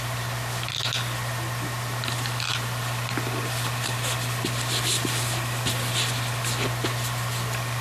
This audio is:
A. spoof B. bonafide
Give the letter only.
B